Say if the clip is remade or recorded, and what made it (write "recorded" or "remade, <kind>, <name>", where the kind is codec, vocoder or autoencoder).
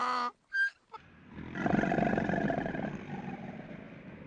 recorded